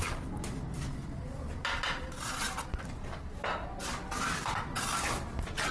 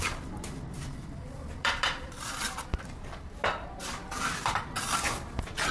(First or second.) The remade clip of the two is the second